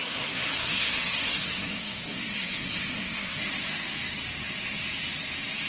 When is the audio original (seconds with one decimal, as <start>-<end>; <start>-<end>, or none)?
3.4-5.7